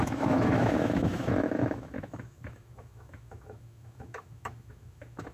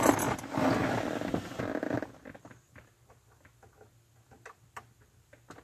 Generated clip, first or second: first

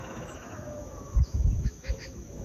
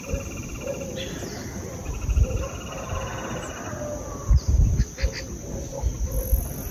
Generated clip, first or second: first